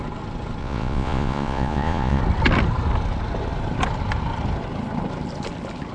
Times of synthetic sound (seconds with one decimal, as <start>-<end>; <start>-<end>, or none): 0.6-2.2